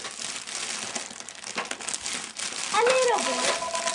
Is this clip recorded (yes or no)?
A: yes